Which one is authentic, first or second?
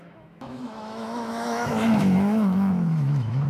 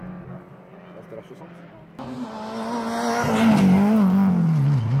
second